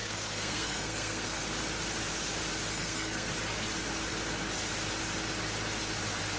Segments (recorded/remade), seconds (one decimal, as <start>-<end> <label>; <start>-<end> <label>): 0.0-1.4 remade; 1.4-2.7 recorded; 2.7-3.3 remade; 3.3-6.4 recorded